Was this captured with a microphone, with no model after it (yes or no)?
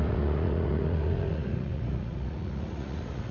no